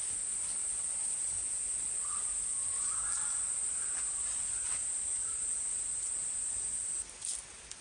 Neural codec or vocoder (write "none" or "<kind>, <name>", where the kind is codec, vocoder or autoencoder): none